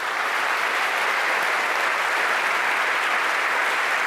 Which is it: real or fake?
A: fake